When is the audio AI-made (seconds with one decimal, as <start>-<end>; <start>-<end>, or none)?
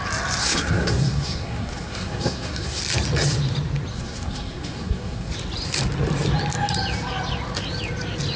0.4-2.8; 3.9-5.3